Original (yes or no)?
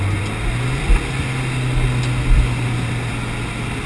yes